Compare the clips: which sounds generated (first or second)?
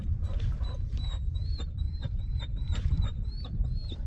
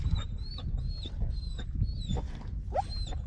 first